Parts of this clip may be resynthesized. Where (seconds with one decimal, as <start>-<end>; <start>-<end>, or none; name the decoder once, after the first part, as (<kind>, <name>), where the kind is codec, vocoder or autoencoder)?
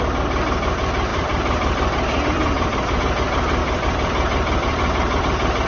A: 1.1-3.0 (vocoder, BigVGAN v2); 3.6-5.2